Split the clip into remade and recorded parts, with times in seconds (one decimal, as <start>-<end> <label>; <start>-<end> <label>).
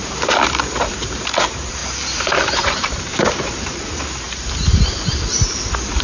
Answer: 0.0-6.0 remade